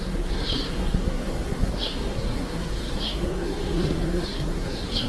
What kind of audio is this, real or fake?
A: fake